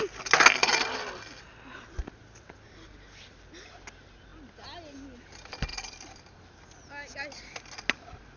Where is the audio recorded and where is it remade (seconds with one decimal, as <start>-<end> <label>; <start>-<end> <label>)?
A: 0.0-8.4 recorded